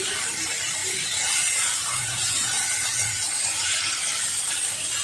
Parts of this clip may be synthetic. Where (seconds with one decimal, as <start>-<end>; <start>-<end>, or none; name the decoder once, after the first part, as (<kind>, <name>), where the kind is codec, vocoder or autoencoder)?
0.8-3.8 (vocoder, Vocos)